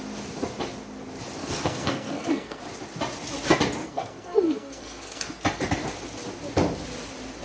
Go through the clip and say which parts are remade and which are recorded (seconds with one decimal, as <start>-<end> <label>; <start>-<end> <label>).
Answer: 0.0-1.4 recorded; 1.4-2.6 remade; 2.6-3.8 recorded; 3.8-5.4 remade; 5.4-7.4 recorded